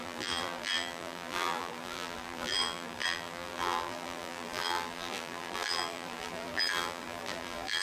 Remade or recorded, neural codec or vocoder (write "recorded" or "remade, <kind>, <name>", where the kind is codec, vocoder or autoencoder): remade, vocoder, BigVGAN v2